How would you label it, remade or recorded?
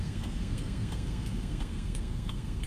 remade